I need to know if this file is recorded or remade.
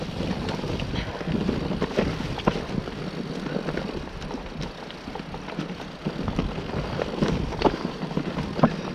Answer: recorded